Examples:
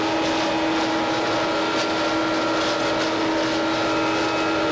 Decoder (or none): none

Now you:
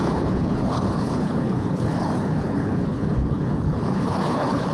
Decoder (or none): codec, HILCodec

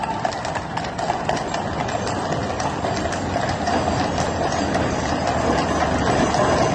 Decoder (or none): none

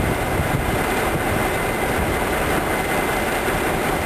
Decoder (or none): none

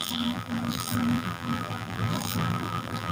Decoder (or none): vocoder, BigVGAN v2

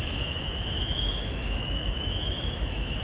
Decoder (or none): autoencoder, DAC-VAE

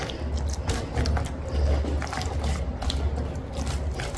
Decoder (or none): none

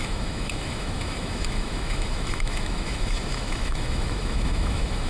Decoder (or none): autoencoder, DAC-VAE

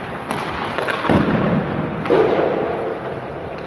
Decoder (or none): none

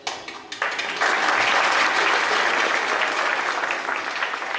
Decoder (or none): none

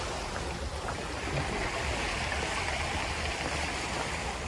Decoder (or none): none